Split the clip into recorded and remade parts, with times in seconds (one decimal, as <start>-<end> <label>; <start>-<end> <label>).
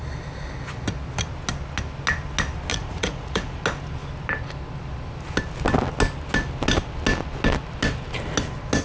0.0-2.7 recorded; 2.7-3.6 remade; 3.6-8.8 recorded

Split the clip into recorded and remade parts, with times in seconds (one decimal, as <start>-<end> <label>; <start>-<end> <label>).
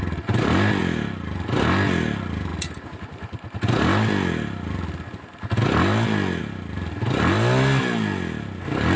0.0-9.0 recorded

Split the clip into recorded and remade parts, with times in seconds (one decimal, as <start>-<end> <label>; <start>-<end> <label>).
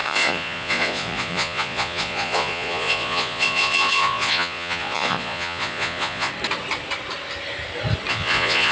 0.0-6.3 remade; 6.3-8.1 recorded; 8.1-8.7 remade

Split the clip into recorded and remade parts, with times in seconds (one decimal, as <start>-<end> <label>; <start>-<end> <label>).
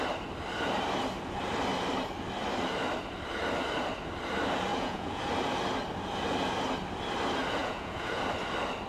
0.0-4.7 recorded; 4.7-5.2 remade; 5.2-7.6 recorded; 7.6-8.2 remade; 8.2-8.9 recorded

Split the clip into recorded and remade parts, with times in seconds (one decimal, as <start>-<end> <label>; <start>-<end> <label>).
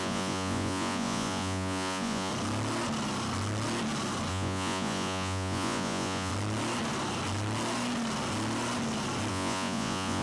0.0-2.3 remade; 2.3-4.3 recorded; 4.3-6.3 remade; 6.3-9.3 recorded; 9.3-10.2 remade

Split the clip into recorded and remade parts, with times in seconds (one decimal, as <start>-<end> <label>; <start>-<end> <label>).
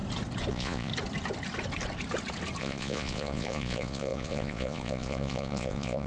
0.0-0.5 recorded; 0.5-0.9 remade; 0.9-2.6 recorded; 2.6-6.1 remade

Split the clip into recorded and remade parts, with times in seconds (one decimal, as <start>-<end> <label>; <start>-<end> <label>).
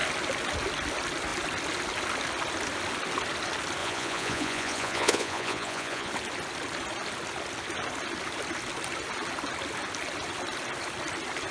0.0-3.8 recorded; 3.8-6.1 remade; 6.1-11.5 recorded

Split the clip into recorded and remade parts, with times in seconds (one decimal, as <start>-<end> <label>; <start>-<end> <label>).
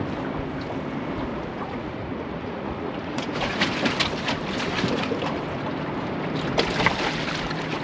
0.0-1.3 recorded; 1.3-3.7 remade; 3.7-7.8 recorded